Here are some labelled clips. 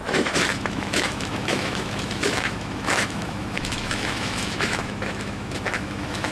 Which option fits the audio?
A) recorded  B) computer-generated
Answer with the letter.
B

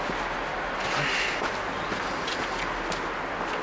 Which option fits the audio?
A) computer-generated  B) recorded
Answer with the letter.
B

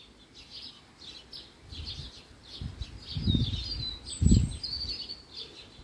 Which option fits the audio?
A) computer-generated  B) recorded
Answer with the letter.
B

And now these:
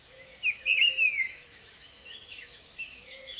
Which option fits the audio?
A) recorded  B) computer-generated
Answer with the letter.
B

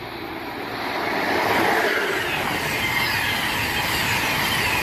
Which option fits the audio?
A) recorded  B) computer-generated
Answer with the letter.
A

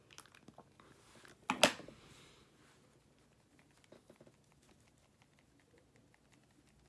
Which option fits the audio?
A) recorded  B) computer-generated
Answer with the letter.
A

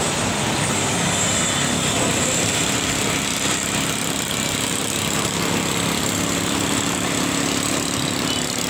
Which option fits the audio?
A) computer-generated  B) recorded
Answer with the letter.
B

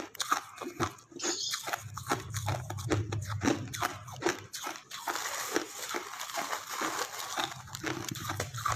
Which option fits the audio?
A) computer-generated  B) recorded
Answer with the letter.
B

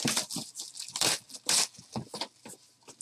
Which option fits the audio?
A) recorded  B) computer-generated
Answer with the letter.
A